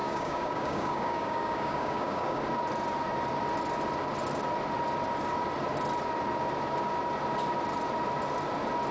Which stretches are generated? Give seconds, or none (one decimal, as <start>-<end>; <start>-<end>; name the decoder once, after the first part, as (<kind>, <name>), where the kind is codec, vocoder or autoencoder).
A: 0.0-2.4 (codec, DAC)

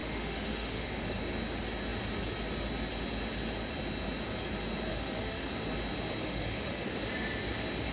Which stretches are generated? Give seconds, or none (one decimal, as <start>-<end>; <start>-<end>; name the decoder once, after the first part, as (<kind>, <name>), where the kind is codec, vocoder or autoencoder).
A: 0.0-1.2 (autoencoder, DAC-VAE); 4.9-5.5; 6.2-6.9

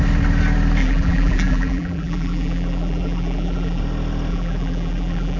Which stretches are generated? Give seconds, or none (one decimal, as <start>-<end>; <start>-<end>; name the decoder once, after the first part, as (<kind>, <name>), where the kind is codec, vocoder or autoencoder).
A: 0.8-3.8 (vocoder, BigVGAN v2); 4.3-5.4

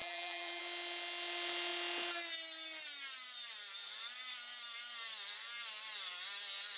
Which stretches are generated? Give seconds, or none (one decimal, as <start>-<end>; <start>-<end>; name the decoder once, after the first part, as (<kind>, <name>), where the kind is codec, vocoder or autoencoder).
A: 0.0-0.6 (vocoder, BigVGAN v2)

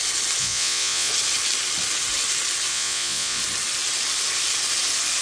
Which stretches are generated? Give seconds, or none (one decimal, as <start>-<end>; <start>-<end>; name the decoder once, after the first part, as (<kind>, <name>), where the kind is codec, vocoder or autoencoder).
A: 0.4-1.1 (vocoder, Vocos); 2.7-3.4

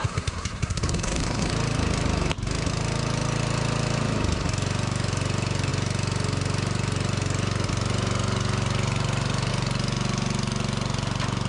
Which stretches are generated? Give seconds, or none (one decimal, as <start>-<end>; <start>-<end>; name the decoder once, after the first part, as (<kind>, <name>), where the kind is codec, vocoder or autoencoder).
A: 0.0-1.5 (codec, SNAC)

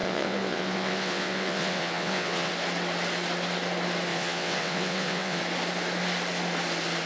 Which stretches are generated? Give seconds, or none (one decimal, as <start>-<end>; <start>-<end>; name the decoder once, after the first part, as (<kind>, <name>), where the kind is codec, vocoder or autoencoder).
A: 0.0-2.5 (vocoder, WaveNeXt); 4.1-5.4